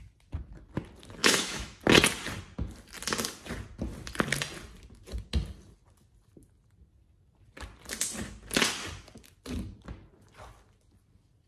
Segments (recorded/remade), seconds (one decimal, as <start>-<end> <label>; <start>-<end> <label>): 0.0-1.2 recorded; 1.2-1.8 remade; 1.8-11.5 recorded

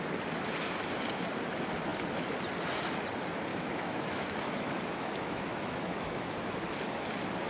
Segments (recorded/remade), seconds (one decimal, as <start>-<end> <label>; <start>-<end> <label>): 0.0-3.5 recorded; 3.5-6.3 remade; 6.3-7.5 recorded

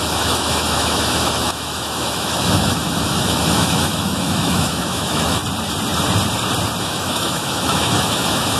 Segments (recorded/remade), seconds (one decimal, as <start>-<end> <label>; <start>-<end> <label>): 0.0-5.4 remade; 5.4-6.8 recorded; 6.8-8.6 remade